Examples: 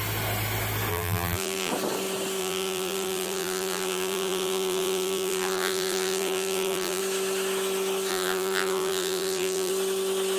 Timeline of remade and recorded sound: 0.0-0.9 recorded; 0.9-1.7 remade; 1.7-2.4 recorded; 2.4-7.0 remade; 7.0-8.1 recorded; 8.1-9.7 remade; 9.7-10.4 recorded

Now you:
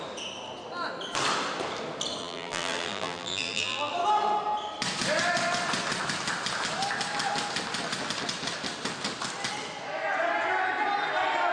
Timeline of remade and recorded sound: 0.0-2.2 recorded; 2.2-3.9 remade; 3.9-11.5 recorded

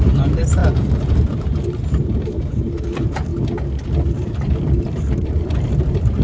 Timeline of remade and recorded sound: 0.0-0.6 remade; 0.6-1.1 recorded; 1.1-3.3 remade; 3.3-4.1 recorded; 4.1-6.2 remade

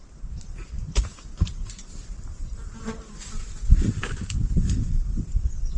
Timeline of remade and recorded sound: 0.0-5.8 recorded

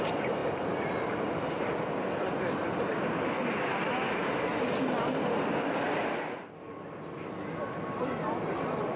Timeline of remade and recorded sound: 0.0-9.0 recorded